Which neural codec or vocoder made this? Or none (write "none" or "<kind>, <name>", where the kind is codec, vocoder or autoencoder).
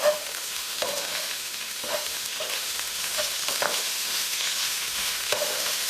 autoencoder, DAC-VAE